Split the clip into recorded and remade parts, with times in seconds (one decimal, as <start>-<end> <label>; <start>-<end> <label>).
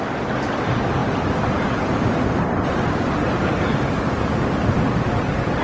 0.0-5.6 remade